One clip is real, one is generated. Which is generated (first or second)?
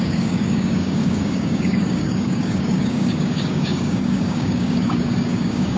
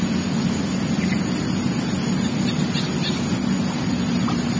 first